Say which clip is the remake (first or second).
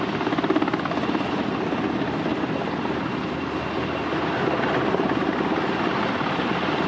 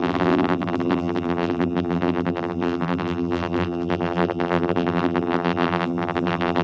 second